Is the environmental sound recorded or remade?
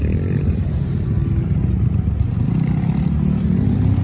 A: recorded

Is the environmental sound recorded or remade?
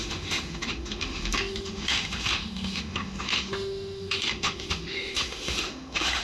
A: remade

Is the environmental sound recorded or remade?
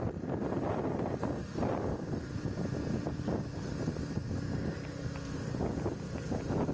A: recorded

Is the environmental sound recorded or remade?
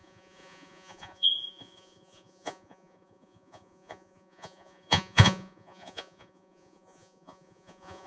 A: remade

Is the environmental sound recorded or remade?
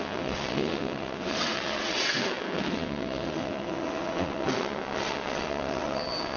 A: remade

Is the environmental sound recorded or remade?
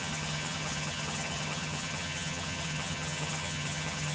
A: remade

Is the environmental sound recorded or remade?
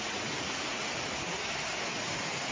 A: recorded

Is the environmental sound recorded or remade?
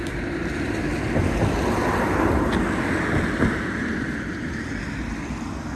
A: recorded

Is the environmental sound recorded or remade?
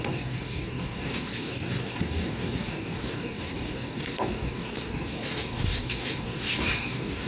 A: remade